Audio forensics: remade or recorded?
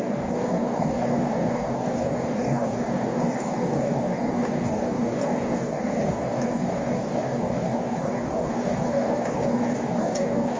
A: remade